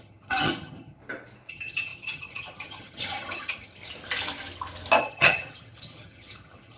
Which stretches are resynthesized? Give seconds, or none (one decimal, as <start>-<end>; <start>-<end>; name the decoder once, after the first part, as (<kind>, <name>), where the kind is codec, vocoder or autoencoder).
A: 0.0-1.0 (vocoder, HiFi-GAN); 1.5-3.8; 5.0-6.8